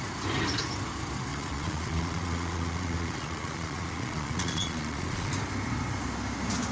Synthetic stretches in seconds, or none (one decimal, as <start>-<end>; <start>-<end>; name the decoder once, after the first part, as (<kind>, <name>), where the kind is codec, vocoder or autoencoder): 1.3-5.3 (vocoder, Vocos)